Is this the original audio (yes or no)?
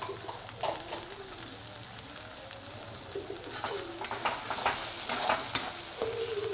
yes